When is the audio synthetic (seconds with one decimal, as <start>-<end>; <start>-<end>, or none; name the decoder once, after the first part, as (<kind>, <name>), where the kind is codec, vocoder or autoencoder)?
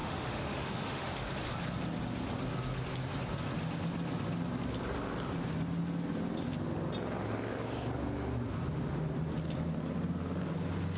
0.0-1.1 (autoencoder, DAC-VAE)